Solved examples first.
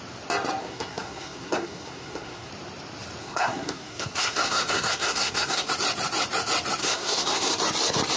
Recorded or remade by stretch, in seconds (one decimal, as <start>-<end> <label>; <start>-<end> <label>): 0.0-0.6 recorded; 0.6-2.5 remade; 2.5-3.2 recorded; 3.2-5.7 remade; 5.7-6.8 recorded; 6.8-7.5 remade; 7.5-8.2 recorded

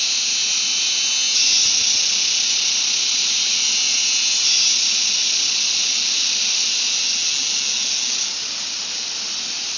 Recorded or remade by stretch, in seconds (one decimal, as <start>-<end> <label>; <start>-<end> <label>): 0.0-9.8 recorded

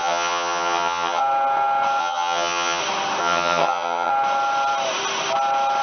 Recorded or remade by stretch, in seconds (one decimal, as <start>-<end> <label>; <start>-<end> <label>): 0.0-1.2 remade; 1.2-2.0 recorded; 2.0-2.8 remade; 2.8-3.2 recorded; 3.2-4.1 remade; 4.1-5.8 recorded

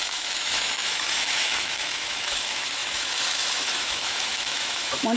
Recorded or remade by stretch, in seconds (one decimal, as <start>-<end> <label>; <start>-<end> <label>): 0.0-5.2 remade